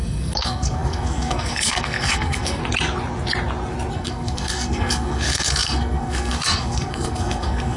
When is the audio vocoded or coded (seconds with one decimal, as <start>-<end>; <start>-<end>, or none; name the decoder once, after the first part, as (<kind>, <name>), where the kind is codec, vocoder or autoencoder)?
0.0-2.6 (codec, SNAC); 3.9-7.8